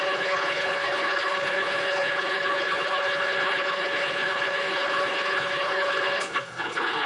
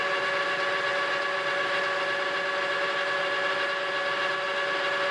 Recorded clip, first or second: second